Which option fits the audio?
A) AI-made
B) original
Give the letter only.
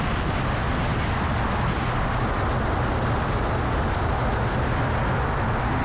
B